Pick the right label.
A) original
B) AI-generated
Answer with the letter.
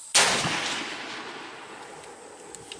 A